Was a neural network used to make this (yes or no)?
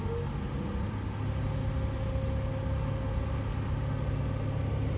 no